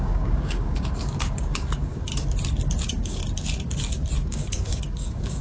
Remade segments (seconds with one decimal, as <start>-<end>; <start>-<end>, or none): 0.0-2.1; 2.8-3.2; 4.2-5.4